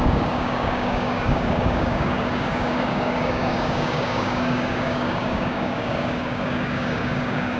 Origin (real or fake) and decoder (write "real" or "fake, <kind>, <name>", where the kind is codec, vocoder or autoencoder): fake, codec, DAC